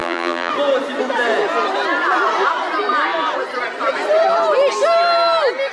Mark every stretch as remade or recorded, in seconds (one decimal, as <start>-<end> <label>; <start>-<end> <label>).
0.0-0.5 remade; 0.5-5.7 recorded